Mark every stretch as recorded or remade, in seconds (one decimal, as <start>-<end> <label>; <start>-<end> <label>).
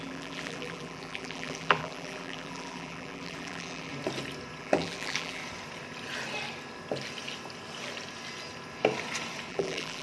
0.0-3.9 remade; 3.9-4.6 recorded; 4.6-5.4 remade; 5.4-9.5 recorded; 9.5-10.0 remade